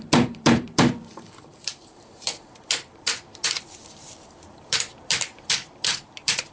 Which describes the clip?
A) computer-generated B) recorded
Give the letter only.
A